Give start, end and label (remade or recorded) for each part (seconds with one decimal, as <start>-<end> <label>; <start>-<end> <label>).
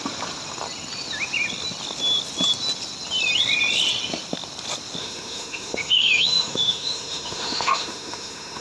0.0-5.0 recorded; 5.0-8.6 remade